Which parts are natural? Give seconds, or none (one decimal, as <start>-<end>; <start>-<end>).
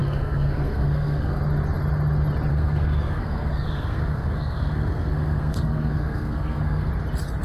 1.4-2.5; 6.9-7.4